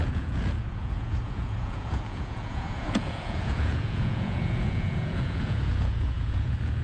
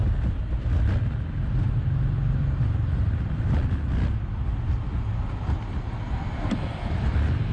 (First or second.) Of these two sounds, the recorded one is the second